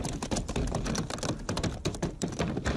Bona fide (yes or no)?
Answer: yes